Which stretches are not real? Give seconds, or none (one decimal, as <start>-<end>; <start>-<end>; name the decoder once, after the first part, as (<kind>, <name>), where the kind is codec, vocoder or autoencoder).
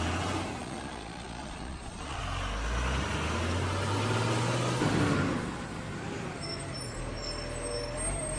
0.6-2.2 (vocoder, Vocos)